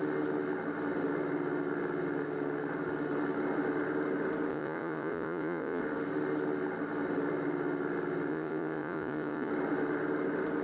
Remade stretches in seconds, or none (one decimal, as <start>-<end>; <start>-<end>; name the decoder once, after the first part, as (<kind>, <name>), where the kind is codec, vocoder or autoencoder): 4.5-5.8 (vocoder, Vocos); 8.3-9.5